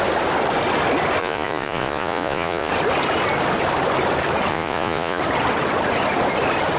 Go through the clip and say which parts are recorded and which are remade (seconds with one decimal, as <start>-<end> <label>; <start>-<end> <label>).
0.0-1.2 recorded; 1.2-2.7 remade; 2.7-4.5 recorded; 4.5-5.2 remade; 5.2-6.8 recorded